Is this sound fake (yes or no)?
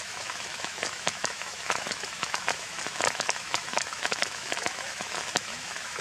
yes